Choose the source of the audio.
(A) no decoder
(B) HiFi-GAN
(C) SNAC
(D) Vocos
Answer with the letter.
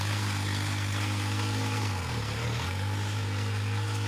C